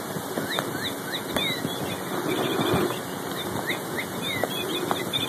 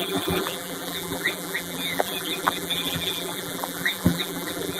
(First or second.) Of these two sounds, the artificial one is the second